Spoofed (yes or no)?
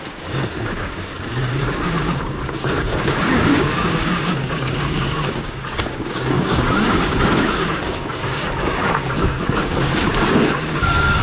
yes